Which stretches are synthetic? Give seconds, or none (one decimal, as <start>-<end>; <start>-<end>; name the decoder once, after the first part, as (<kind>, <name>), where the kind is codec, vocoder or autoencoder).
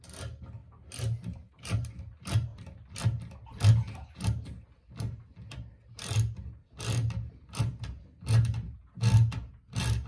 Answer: 0.6-1.9 (vocoder, BigVGAN v2)